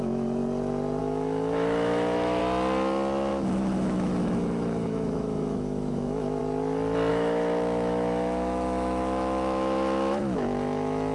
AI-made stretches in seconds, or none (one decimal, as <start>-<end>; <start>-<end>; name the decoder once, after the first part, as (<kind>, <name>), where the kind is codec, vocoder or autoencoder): 0.0-0.4 (autoencoder, DAC-VAE); 1.0-2.4; 3.3-6.4; 7.1-11.1